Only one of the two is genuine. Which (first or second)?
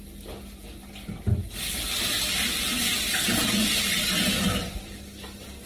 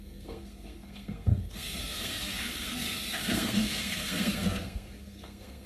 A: first